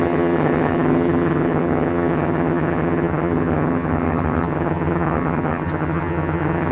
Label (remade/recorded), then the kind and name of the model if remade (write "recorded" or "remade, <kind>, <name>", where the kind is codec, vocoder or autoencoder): remade, vocoder, HiFi-GAN